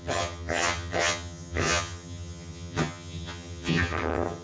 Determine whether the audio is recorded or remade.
remade